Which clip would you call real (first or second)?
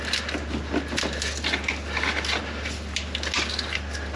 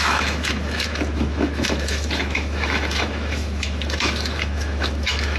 first